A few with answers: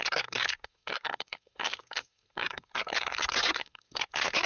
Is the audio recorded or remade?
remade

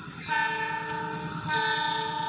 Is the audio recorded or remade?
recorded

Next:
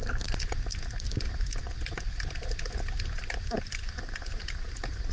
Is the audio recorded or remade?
recorded